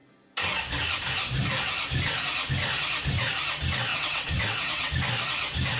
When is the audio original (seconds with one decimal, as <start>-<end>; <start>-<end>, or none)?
0.0-3.9; 4.9-5.8